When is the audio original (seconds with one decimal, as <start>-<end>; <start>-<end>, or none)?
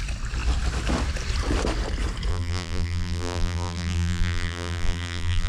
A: 0.0-2.3